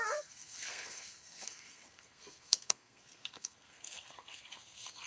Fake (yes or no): yes